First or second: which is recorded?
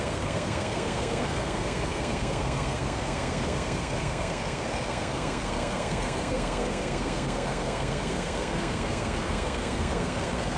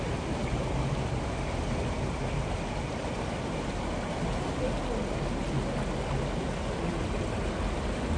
second